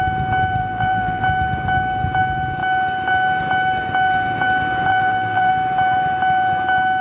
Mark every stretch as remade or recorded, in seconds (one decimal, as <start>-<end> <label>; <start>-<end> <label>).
0.0-0.6 recorded; 0.6-1.2 remade; 1.2-4.9 recorded; 4.9-5.5 remade; 5.5-7.0 recorded

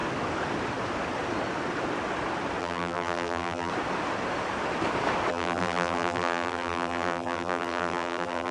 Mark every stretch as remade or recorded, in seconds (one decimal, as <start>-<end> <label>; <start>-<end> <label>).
0.0-2.6 recorded; 2.6-3.7 remade; 3.7-5.3 recorded; 5.3-8.5 remade